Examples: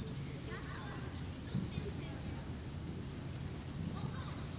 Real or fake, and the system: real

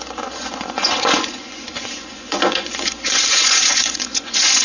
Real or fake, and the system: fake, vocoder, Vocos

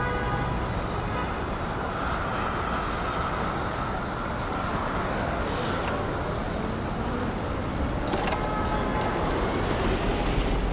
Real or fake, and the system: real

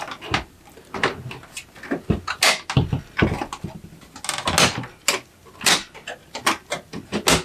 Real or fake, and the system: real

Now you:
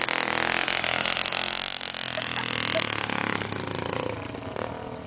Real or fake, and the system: real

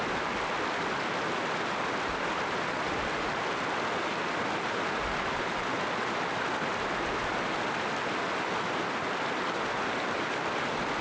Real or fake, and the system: real